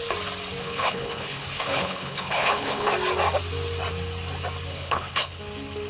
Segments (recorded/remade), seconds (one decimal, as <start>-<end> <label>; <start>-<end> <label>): 0.0-0.6 recorded; 0.6-2.9 remade; 2.9-4.7 recorded; 4.7-5.4 remade; 5.4-5.9 recorded